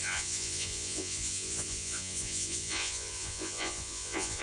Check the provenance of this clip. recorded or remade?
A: remade